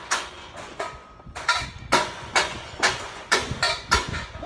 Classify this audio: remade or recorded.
remade